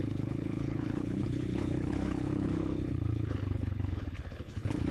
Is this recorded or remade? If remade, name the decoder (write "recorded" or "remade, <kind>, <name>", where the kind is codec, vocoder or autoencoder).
remade, codec, HILCodec